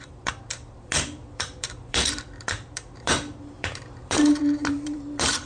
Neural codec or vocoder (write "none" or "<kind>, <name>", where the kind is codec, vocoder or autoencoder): vocoder, BigVGAN v2